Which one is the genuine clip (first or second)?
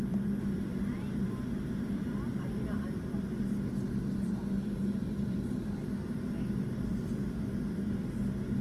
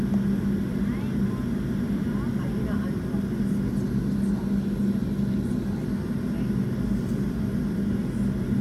second